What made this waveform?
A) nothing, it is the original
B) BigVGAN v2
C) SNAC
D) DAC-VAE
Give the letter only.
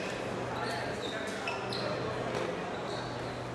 A